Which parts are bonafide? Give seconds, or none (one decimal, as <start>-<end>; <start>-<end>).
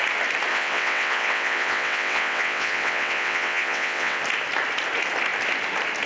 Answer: 0.0-0.5; 4.2-6.1